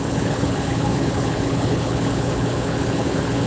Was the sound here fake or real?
fake